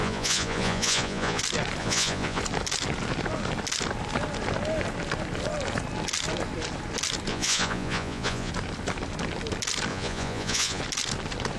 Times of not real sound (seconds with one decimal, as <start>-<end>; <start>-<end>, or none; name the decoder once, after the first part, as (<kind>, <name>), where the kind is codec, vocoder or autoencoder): 0.0-1.4 (vocoder, Vocos); 1.8-2.4; 7.3-8.5; 9.9-10.8